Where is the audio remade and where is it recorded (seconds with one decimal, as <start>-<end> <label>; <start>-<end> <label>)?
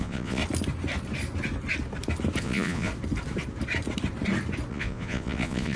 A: 0.0-0.4 remade; 0.4-2.4 recorded; 2.4-2.9 remade; 2.9-4.7 recorded; 4.7-5.8 remade